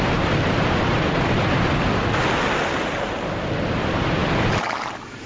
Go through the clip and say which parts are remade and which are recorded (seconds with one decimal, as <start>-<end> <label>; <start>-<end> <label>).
0.0-5.3 recorded